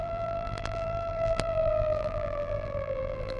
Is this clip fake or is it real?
fake